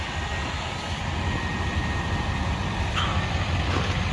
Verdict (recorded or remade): recorded